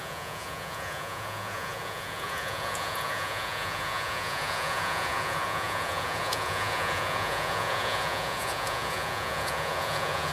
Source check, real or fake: fake